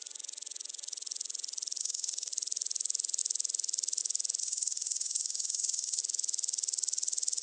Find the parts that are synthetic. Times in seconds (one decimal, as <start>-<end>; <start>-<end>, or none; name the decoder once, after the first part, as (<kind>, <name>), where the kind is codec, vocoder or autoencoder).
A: 1.8-2.3 (codec, DAC); 4.4-6.0